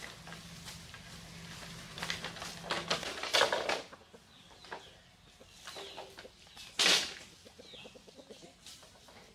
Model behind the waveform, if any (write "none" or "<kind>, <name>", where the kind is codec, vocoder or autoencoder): none